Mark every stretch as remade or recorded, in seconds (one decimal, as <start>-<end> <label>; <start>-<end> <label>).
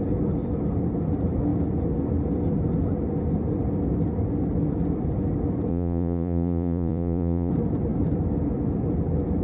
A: 0.0-5.7 recorded; 5.7-7.5 remade; 7.5-9.4 recorded